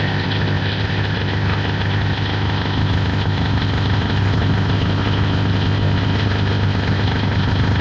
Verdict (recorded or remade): remade